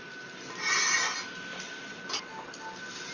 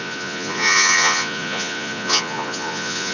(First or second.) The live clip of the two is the first